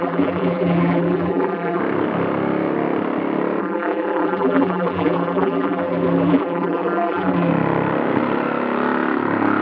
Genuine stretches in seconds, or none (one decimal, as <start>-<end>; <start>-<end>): 1.8-3.6; 7.5-9.6